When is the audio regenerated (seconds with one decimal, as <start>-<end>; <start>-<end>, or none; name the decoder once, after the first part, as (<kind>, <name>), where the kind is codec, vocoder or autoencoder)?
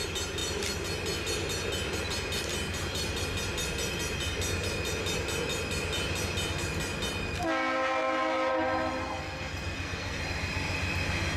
9.0-10.2 (codec, SNAC)